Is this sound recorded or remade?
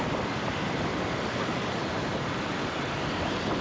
remade